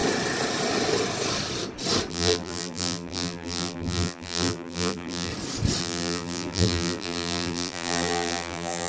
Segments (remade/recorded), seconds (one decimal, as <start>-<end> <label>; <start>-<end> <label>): 0.0-2.1 recorded; 2.1-5.3 remade; 5.3-5.8 recorded; 5.8-8.9 remade